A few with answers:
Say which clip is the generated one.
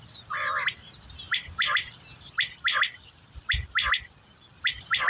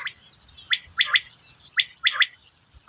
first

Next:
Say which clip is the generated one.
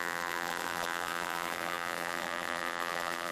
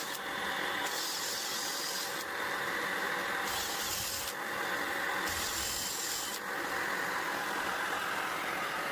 first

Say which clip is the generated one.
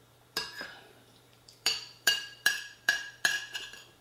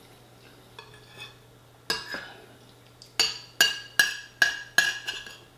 first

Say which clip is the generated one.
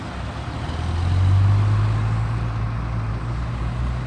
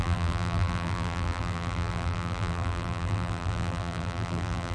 second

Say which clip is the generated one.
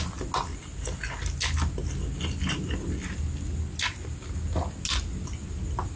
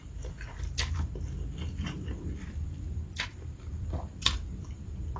second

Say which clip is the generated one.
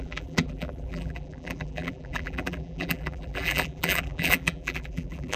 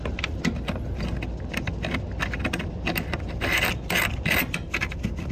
first